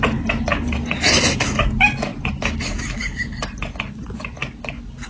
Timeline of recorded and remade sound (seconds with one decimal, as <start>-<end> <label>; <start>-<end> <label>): 0.0-5.1 recorded